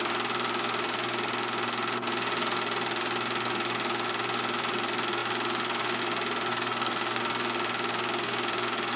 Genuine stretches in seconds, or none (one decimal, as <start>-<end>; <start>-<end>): 0.0-6.5; 7.2-9.0